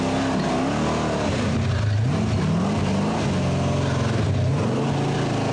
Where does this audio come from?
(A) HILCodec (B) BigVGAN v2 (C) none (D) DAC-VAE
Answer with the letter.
C